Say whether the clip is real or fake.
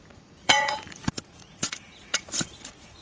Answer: fake